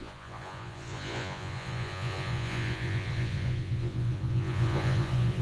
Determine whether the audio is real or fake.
fake